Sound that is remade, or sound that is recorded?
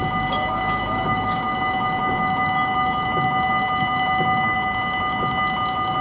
recorded